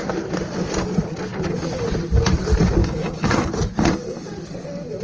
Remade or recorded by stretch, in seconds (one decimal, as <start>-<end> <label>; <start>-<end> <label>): 0.0-2.8 recorded; 2.8-3.5 remade; 3.5-5.0 recorded